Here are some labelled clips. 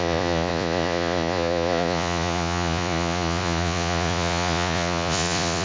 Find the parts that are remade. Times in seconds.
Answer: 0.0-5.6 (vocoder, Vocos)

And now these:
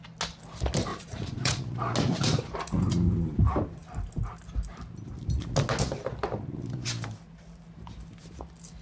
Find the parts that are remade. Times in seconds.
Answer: 0.9-1.6 (vocoder, Vocos)

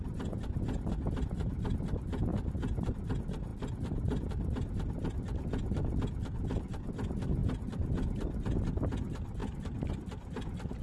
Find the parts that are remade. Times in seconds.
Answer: 2.3-2.9 (vocoder, BigVGAN v2); 3.5-4.3

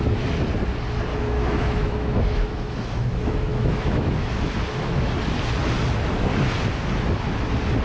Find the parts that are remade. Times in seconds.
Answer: 1.1-5.2 (autoencoder, DAC-VAE)

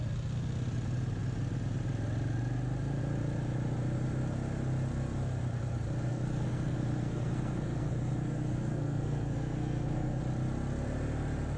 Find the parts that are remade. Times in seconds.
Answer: 6.1-10.2 (codec, SNAC)

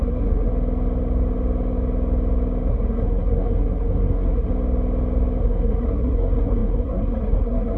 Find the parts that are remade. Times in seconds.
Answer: 0.0-0.5 (codec, SNAC); 2.7-4.5; 5.4-7.8

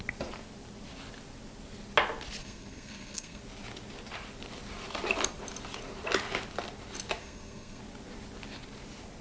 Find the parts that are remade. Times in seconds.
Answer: 2.4-3.4 (codec, SNAC); 7.2-7.8

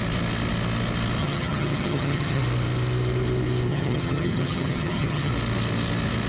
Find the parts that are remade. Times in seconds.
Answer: 1.2-2.4 (vocoder, HiFi-GAN); 3.7-5.3